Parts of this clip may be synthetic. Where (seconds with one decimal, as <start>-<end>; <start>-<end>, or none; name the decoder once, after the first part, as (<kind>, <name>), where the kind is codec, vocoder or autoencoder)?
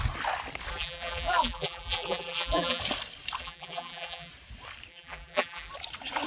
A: 0.7-2.8 (vocoder, BigVGAN v2); 3.4-4.3; 4.9-5.7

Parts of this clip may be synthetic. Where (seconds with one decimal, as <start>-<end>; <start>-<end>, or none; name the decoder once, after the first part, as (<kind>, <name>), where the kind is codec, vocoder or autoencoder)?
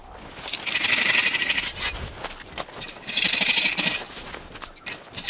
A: 1.2-4.4 (vocoder, BigVGAN v2)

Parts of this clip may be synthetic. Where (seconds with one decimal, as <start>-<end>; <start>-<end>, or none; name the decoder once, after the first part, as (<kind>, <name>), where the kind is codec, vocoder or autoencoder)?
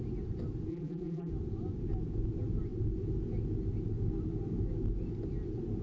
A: 0.7-1.3 (vocoder, BigVGAN v2)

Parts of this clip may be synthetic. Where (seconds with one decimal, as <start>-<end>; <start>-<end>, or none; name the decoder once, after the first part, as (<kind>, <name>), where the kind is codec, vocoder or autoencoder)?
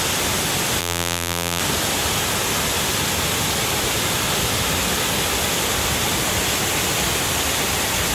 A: 0.8-1.6 (vocoder, BigVGAN v2)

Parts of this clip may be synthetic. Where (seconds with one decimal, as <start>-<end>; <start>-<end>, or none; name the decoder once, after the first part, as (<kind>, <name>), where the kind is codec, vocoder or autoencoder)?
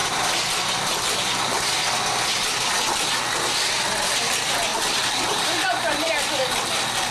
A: 4.7-6.1 (vocoder, BigVGAN v2)